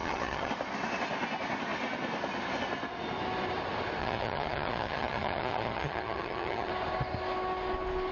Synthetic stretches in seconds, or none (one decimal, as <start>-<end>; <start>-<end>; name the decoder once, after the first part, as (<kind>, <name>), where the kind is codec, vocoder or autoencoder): 0.0-0.5 (vocoder, HiFi-GAN); 4.0-6.7